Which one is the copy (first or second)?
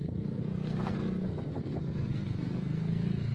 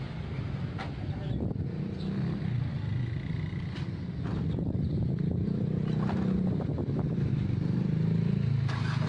first